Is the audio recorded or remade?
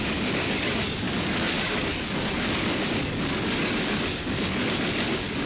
remade